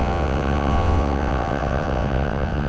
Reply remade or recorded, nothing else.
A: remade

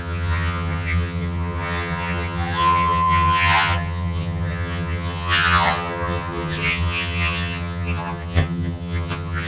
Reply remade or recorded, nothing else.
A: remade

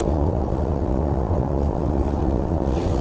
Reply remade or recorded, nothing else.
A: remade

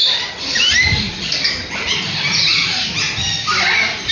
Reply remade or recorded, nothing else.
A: recorded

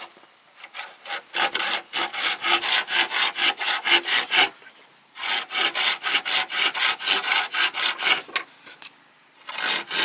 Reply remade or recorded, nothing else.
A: recorded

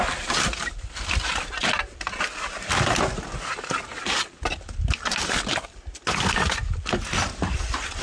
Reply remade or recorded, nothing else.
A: recorded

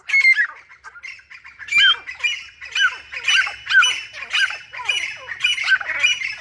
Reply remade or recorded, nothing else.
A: recorded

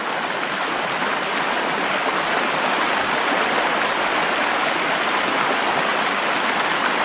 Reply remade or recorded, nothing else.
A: recorded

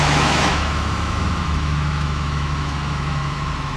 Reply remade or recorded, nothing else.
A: remade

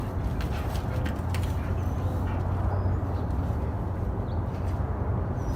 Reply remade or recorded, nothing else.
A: recorded